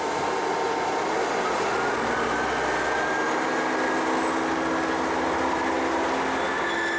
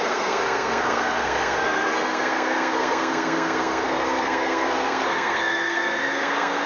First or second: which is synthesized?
second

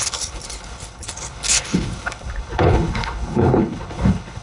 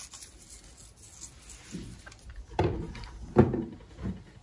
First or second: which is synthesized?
first